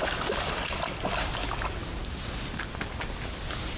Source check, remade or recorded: recorded